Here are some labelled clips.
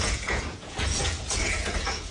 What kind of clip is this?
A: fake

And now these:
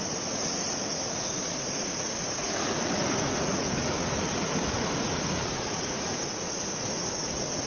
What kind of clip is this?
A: fake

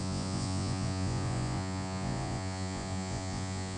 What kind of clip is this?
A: fake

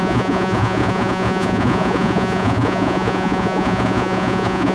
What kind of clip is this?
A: fake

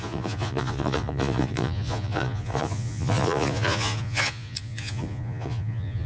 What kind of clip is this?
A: fake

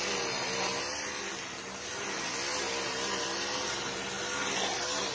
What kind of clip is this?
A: real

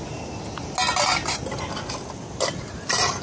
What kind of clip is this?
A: real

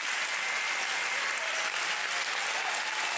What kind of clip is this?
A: real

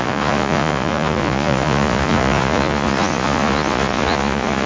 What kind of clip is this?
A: fake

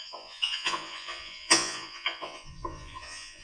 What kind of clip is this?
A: fake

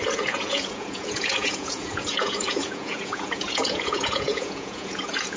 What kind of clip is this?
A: fake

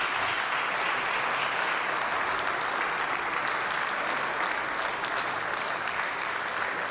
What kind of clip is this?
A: real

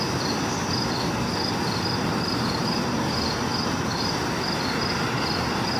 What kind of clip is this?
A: real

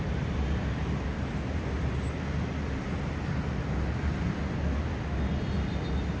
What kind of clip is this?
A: real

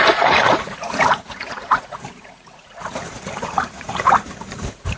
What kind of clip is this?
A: fake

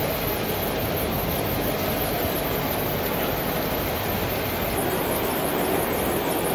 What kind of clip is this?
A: real